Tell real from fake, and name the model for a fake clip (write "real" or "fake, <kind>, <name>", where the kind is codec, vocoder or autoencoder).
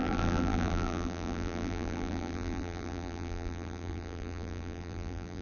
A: fake, vocoder, BigVGAN v2